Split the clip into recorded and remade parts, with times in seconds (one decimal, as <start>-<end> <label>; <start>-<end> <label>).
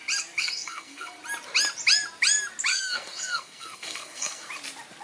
0.0-0.4 recorded; 0.4-1.2 remade; 1.2-2.7 recorded; 2.7-4.5 remade; 4.5-5.0 recorded